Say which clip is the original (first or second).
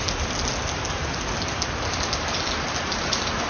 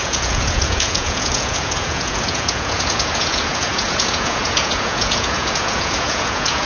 first